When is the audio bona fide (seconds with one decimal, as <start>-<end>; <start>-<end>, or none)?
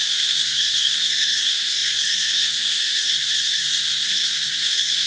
none